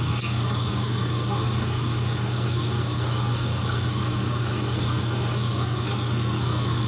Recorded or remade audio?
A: remade